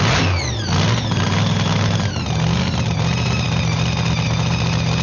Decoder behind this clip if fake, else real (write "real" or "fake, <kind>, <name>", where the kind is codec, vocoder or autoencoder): real